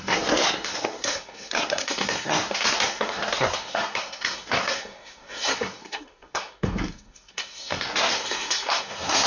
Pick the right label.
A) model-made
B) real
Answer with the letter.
A